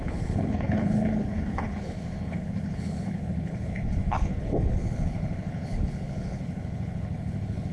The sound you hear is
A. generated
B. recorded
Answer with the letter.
A